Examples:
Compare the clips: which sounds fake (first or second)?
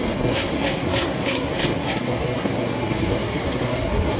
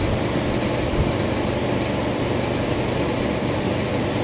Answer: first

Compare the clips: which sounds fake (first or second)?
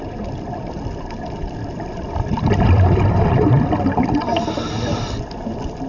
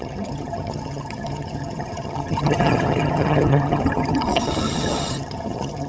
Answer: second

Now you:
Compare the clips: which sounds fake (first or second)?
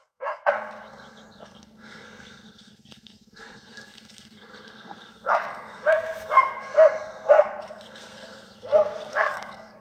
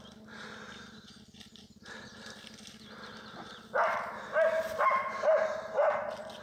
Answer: first